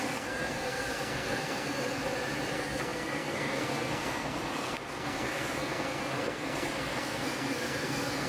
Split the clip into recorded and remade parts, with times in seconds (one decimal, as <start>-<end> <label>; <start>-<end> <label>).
0.0-2.0 remade; 2.0-2.5 recorded; 2.5-8.3 remade